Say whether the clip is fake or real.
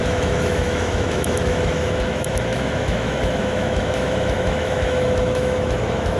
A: fake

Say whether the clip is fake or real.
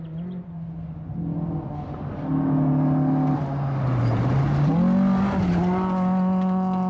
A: real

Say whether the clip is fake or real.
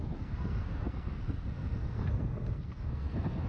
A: fake